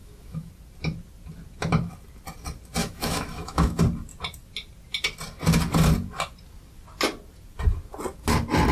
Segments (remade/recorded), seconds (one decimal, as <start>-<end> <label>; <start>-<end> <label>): 0.0-0.5 remade; 0.5-2.8 recorded; 2.8-3.8 remade; 3.8-8.7 recorded